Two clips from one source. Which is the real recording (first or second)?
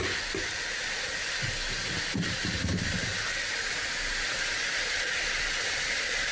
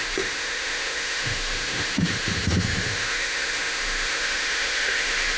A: first